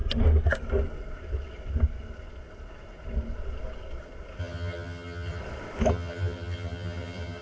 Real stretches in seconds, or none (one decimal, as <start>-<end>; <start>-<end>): 0.0-4.4; 5.4-5.9